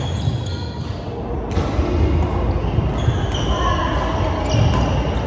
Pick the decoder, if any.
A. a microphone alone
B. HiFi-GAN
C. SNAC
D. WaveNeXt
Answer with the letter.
A